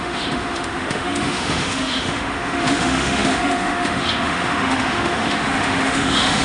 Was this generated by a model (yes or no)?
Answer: yes